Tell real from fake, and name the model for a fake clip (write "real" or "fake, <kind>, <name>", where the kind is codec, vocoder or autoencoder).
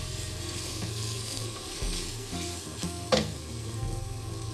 fake, codec, SNAC